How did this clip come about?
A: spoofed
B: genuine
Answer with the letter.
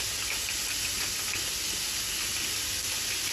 B